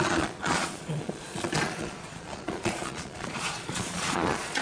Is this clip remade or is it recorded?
remade